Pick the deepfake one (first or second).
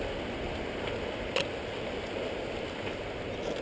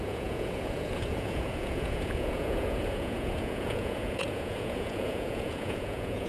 second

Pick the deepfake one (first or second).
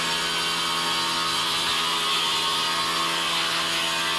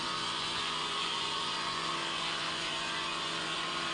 second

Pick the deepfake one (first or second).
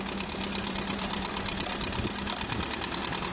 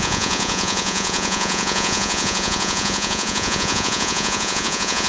second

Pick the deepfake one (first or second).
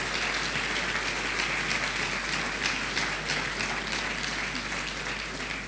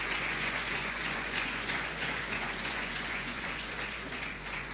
second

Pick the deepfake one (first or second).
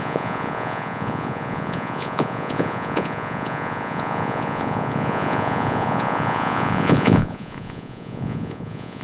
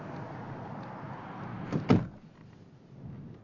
first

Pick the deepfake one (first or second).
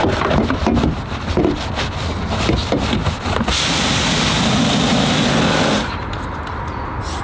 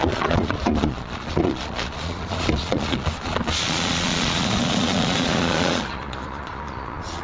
second